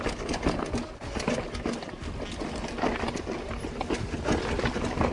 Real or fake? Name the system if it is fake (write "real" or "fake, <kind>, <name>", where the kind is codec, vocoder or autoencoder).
real